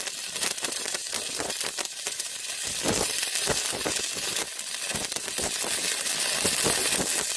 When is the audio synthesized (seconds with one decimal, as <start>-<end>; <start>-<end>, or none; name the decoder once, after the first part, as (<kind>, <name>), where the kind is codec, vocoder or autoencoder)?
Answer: 1.0-4.0 (vocoder, BigVGAN v2)